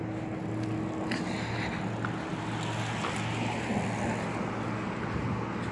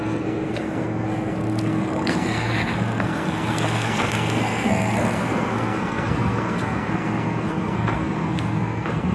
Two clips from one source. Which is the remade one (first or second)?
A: second